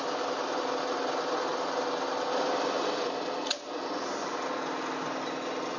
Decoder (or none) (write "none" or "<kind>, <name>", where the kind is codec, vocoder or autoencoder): none